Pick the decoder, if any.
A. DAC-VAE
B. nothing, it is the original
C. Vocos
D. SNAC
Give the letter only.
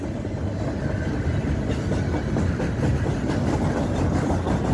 B